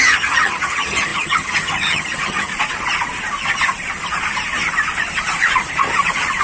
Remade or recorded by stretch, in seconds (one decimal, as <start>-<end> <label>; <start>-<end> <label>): 0.0-2.5 remade; 2.5-6.4 recorded